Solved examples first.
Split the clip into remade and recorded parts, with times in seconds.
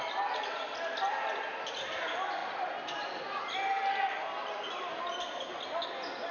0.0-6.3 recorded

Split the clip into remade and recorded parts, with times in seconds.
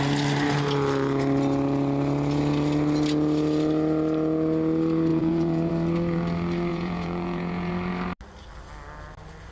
0.0-5.1 recorded; 5.1-5.7 remade; 5.7-6.7 recorded; 6.7-7.7 remade; 7.7-9.5 recorded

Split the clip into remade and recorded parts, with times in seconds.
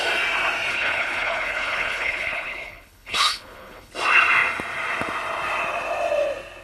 0.0-0.7 recorded; 0.7-3.9 remade; 3.9-6.6 recorded